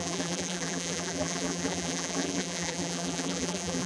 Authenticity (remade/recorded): remade